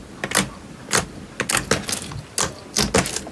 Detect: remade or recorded recorded